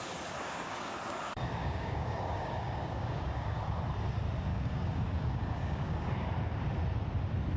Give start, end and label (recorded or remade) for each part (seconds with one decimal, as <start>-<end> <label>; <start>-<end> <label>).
0.0-0.4 recorded; 0.4-1.0 remade; 1.0-1.6 recorded; 1.6-3.6 remade; 3.6-4.5 recorded; 4.5-6.1 remade; 6.1-7.6 recorded